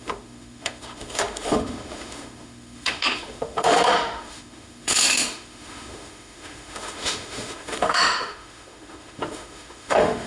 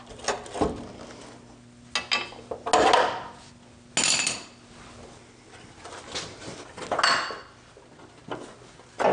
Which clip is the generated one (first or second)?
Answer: first